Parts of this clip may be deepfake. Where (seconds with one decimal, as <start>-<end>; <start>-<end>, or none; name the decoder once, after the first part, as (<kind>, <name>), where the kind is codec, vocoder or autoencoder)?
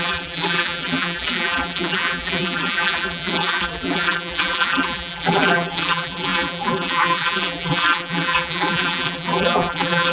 0.0-10.1 (vocoder, BigVGAN v2)